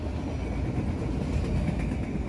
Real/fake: real